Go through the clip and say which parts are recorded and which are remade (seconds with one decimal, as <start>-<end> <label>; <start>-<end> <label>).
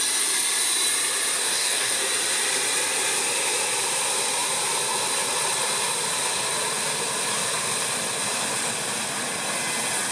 0.0-1.4 recorded; 1.4-2.0 remade; 2.0-10.1 recorded